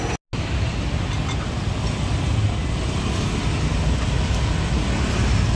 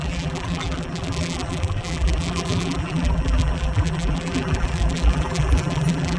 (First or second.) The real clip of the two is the first